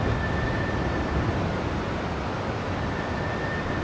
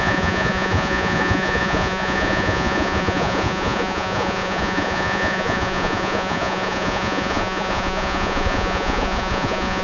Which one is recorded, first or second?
first